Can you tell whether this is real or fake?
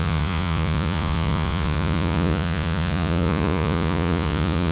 fake